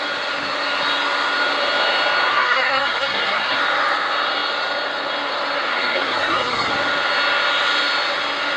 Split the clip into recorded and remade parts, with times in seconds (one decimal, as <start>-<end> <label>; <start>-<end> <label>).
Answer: 0.0-2.3 recorded; 2.3-3.6 remade; 3.6-5.7 recorded; 5.7-6.7 remade; 6.7-8.6 recorded